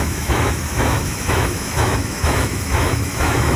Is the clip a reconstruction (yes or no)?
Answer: yes